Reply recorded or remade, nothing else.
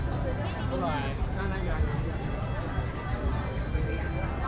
recorded